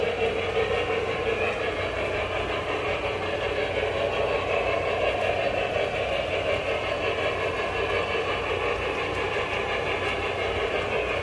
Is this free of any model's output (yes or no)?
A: yes